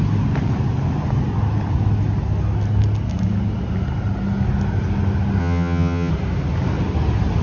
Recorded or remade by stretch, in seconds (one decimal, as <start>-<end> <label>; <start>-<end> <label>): 0.0-5.4 recorded; 5.4-6.1 remade; 6.1-7.4 recorded